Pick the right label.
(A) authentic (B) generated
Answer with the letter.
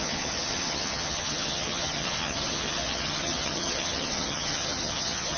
B